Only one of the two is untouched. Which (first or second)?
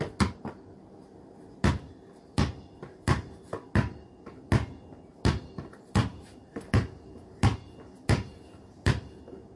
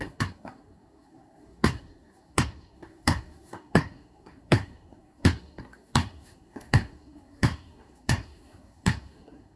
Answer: first